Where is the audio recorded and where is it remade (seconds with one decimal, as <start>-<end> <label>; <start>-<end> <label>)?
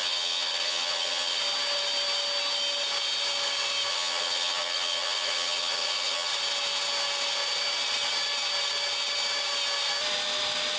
0.0-1.4 remade; 1.4-3.9 recorded; 3.9-6.3 remade; 6.3-10.8 recorded